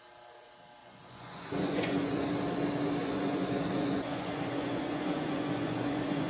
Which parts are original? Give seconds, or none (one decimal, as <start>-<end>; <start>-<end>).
0.0-0.8; 2.3-3.0